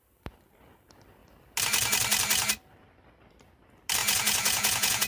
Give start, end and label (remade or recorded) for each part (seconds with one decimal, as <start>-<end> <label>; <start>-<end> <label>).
0.0-4.0 recorded; 4.0-5.1 remade